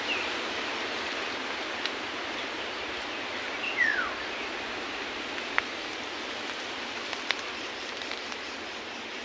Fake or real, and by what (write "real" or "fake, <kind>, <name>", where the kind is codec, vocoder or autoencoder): real